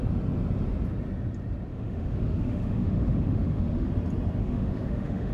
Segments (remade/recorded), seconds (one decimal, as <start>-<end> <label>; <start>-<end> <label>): 0.0-1.7 recorded; 1.7-3.9 remade; 3.9-4.4 recorded; 4.4-5.3 remade